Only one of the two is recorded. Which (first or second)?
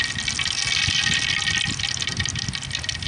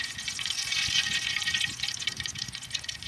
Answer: first